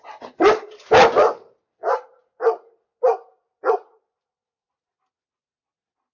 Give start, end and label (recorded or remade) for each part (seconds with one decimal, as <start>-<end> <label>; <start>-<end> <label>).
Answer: 0.0-6.1 recorded